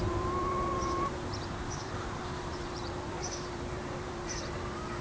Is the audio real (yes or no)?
no